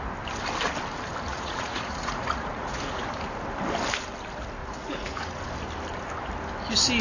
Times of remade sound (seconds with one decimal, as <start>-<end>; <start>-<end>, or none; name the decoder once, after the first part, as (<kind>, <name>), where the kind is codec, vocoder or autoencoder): 1.3-2.8 (vocoder, Vocos); 4.6-5.4